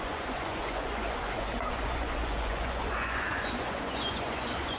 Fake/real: fake